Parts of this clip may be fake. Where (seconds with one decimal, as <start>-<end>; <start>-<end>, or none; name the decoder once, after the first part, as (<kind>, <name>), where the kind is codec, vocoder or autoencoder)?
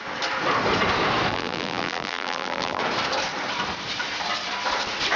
1.3-2.8 (vocoder, BigVGAN v2)